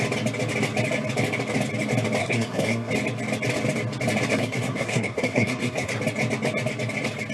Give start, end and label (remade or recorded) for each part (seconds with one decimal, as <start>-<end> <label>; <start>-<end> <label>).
0.0-2.2 recorded; 2.2-2.9 remade; 2.9-4.3 recorded; 4.3-5.9 remade; 5.9-7.3 recorded